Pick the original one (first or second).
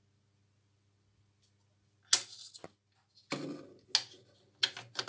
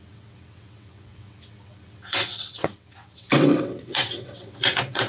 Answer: first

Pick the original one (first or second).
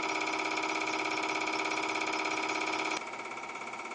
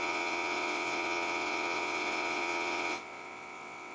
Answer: first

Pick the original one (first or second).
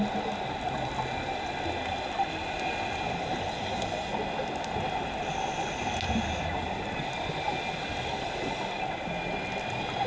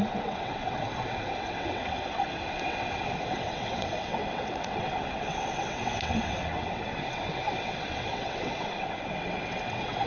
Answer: first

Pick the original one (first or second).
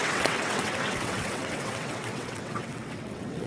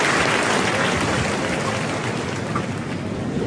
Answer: second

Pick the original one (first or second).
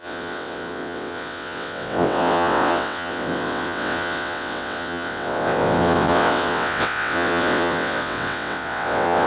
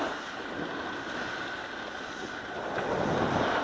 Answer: second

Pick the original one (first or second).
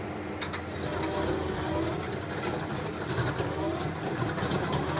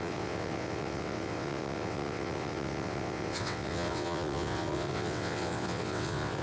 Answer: first